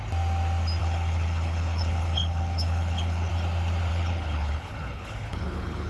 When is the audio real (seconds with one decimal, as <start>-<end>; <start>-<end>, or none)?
0.0-0.8; 3.3-3.9